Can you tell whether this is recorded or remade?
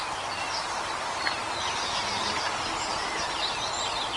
remade